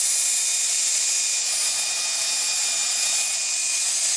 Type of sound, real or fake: real